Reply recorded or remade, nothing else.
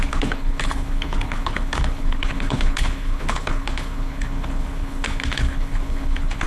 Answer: remade